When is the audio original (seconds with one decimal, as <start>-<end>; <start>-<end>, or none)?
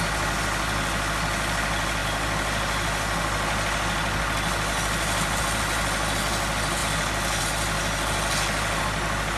0.0-9.4